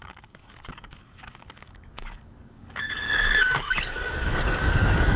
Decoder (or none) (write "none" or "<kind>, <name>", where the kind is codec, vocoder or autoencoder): codec, DAC